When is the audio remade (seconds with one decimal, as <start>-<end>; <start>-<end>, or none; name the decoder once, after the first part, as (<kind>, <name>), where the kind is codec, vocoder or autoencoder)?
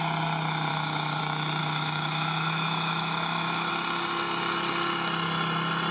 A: 0.7-1.2 (autoencoder, DAC-VAE); 1.6-3.7